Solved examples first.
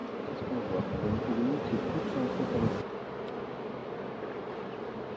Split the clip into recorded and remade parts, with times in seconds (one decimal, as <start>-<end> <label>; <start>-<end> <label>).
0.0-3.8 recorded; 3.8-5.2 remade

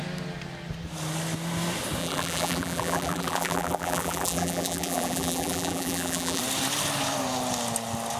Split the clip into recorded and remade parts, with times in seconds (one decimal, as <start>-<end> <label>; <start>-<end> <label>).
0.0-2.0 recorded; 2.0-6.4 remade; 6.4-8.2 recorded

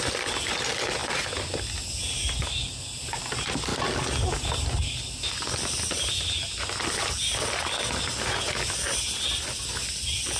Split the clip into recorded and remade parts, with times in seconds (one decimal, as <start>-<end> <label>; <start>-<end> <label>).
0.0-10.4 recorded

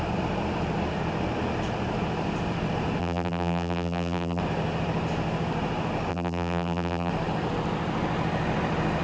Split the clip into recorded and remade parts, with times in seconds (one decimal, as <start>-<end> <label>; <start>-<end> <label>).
0.0-3.0 recorded; 3.0-4.4 remade; 4.4-6.1 recorded; 6.1-7.1 remade; 7.1-9.0 recorded

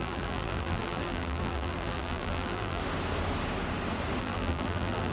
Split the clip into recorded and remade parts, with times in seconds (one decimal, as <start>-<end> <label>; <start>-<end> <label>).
0.0-2.8 remade; 2.8-4.2 recorded; 4.2-5.1 remade